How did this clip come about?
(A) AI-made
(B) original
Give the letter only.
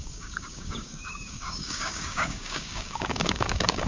A